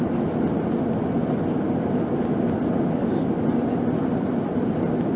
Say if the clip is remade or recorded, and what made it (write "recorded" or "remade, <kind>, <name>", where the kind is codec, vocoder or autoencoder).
recorded